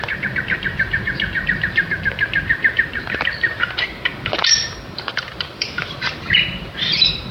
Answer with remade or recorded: remade